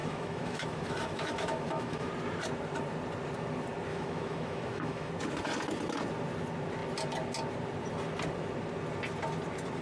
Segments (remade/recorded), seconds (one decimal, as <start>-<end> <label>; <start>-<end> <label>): 0.0-2.1 remade; 2.1-3.9 recorded; 3.9-5.1 remade; 5.1-9.8 recorded